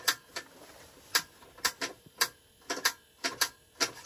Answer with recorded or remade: recorded